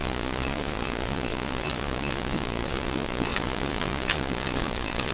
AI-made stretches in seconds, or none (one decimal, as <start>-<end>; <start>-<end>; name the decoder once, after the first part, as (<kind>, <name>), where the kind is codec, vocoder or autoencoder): 0.0-5.1 (vocoder, Vocos)